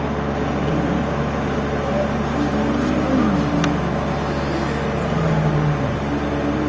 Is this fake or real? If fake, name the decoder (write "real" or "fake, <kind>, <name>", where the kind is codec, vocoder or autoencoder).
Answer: real